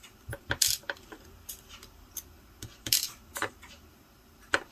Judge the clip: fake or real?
fake